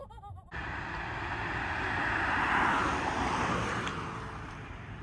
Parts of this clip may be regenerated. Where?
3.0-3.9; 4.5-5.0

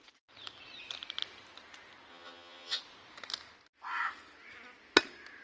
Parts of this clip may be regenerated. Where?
2.1-2.8